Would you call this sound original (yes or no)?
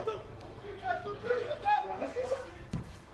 no